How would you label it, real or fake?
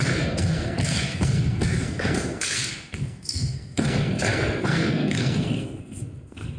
fake